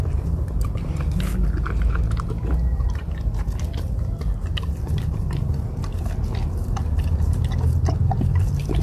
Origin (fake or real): real